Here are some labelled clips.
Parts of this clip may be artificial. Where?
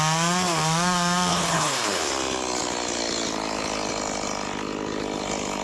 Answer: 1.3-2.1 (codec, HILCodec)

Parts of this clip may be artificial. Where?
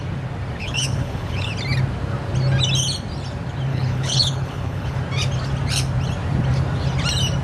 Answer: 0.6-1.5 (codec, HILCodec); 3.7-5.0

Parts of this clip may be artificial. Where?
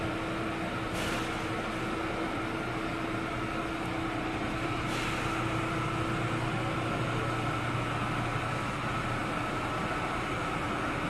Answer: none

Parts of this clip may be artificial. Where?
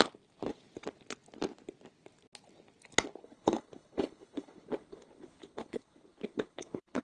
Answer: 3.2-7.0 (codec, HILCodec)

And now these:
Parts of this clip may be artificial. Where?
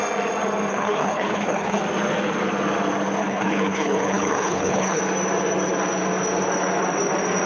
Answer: 0.7-1.8 (codec, HILCodec); 3.2-5.0